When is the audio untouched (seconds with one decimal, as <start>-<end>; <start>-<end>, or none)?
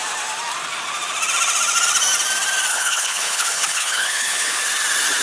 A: 0.0-2.7; 4.6-5.2